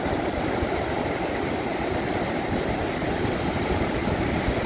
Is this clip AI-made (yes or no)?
no